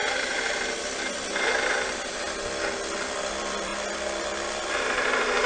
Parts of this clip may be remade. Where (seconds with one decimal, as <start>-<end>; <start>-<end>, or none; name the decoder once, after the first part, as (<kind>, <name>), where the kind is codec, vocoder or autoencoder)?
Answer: 3.3-3.7 (vocoder, BigVGAN v2); 4.2-5.5